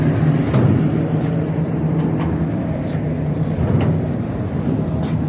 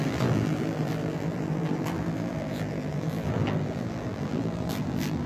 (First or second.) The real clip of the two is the first